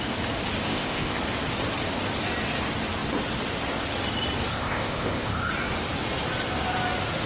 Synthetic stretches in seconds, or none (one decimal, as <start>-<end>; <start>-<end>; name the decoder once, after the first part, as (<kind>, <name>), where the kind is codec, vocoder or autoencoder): 0.7-1.2 (codec, ZipCodec); 4.5-5.5